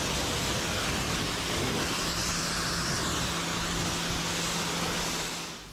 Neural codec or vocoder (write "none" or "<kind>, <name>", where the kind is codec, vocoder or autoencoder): none